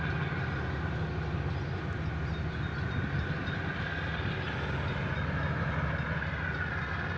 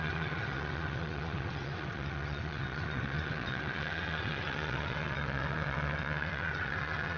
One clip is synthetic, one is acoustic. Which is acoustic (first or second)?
first